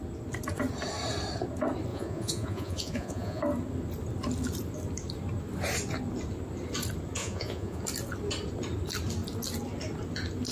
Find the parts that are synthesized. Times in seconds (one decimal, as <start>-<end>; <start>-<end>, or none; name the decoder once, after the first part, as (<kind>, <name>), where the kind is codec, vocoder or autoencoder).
1.9-3.4 (vocoder, Vocos); 7.2-7.8